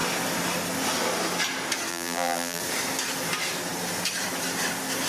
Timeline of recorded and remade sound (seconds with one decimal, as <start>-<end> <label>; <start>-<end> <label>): 0.0-1.9 recorded; 1.9-2.6 remade; 2.6-5.1 recorded

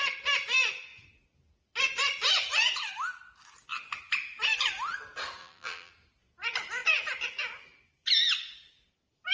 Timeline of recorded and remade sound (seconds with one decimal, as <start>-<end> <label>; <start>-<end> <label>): 0.0-5.4 recorded; 5.4-5.9 remade; 5.9-9.3 recorded

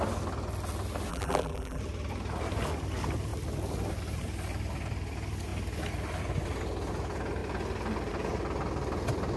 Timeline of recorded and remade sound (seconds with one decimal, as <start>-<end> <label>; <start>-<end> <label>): 0.0-1.1 recorded; 1.1-1.8 remade; 1.8-9.4 recorded

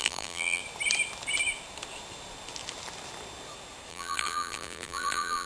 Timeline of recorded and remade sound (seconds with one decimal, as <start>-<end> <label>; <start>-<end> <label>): 0.0-0.6 remade; 0.6-3.9 recorded; 3.9-5.5 remade